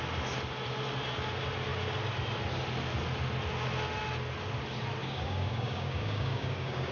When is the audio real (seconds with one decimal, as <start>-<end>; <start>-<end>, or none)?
0.0-5.0